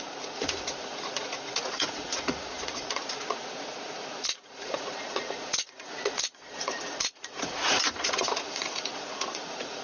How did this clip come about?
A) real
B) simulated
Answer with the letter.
B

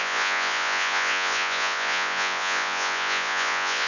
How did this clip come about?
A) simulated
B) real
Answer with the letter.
A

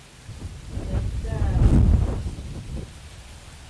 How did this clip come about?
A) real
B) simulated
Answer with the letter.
A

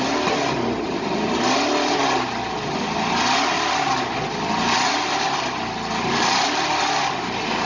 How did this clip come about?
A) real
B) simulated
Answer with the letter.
A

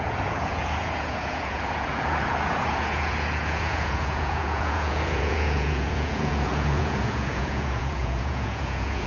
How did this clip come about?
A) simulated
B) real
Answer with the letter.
A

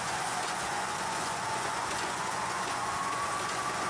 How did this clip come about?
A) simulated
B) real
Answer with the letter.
A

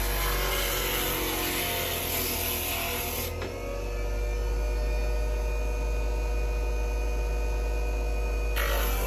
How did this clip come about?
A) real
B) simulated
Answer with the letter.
A